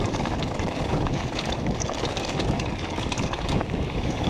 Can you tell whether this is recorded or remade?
remade